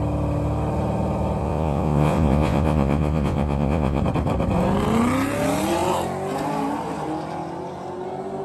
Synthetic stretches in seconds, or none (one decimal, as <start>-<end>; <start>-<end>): 1.4-4.0